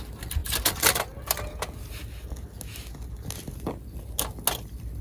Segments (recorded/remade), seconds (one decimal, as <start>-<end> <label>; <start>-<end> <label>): 0.0-5.0 recorded